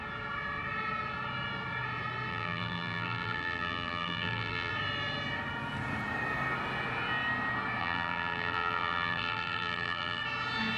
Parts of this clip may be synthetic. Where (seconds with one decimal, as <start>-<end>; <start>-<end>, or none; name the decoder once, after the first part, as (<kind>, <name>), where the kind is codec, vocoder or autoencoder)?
2.3-4.7 (vocoder, BigVGAN v2); 7.8-10.2